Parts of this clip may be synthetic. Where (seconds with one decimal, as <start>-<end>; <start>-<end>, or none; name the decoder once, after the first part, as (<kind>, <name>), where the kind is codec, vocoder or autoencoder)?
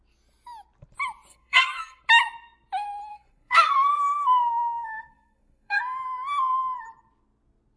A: 1.3-2.0 (codec, SNAC); 3.1-5.8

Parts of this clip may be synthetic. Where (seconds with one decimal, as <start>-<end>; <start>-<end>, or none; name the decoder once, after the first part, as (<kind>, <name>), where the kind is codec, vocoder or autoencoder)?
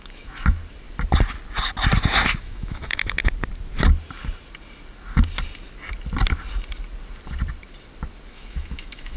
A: 0.0-0.6 (autoencoder, DAC-VAE); 2.4-3.2; 8.3-9.2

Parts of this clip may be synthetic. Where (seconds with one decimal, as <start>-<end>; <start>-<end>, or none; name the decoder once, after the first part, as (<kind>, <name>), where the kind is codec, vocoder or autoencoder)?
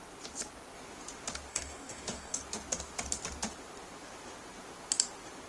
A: 1.5-2.4 (codec, DAC)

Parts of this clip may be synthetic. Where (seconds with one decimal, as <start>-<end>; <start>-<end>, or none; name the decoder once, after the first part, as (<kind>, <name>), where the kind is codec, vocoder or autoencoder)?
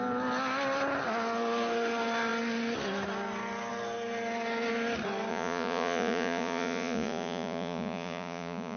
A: 5.3-8.8 (vocoder, Vocos)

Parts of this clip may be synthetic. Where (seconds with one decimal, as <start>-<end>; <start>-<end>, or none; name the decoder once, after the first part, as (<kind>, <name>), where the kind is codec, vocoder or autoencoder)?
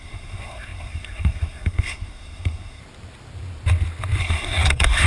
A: 0.0-2.8 (codec, SNAC); 4.2-5.1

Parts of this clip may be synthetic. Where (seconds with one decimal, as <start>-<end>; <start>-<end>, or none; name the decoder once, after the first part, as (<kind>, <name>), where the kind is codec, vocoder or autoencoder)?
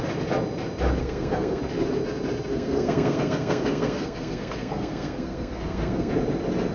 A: 1.0-1.6 (codec, SNAC); 2.5-6.1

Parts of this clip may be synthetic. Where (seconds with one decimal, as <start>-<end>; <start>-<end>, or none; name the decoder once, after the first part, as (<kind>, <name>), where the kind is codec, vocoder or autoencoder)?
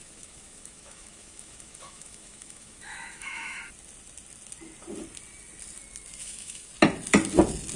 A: 0.0-3.6 (autoencoder, DAC-VAE); 6.2-6.7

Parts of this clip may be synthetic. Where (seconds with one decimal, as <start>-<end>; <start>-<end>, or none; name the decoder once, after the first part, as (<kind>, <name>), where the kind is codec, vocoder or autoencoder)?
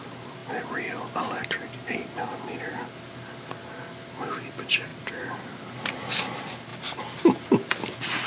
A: none